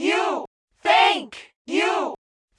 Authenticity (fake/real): real